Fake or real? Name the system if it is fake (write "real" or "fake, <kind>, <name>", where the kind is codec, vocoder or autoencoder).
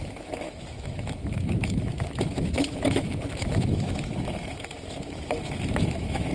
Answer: fake, autoencoder, DAC-VAE